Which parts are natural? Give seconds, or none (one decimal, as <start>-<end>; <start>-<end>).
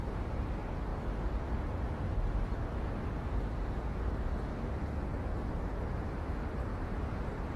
0.9-5.5